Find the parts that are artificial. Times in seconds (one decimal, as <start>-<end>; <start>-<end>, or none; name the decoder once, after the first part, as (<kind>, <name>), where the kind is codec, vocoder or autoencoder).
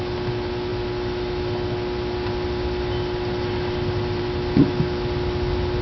none